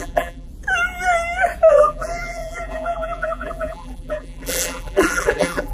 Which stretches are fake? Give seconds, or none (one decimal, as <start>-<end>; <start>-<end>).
0.0-0.5; 1.7-5.7